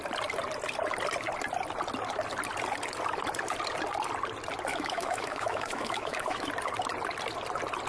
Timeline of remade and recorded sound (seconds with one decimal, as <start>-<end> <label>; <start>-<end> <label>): 0.0-4.7 recorded; 4.7-6.5 remade; 6.5-7.9 recorded